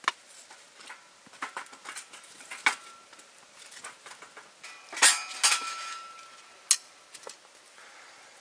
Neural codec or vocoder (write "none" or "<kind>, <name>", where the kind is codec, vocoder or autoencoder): none